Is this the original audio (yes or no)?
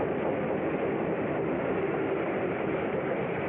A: no